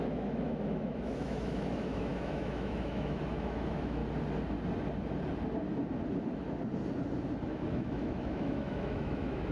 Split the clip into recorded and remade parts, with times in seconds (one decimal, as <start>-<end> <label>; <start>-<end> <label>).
0.0-4.0 remade; 4.0-7.5 recorded; 7.5-9.5 remade